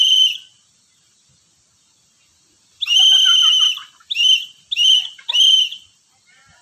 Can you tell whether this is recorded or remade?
recorded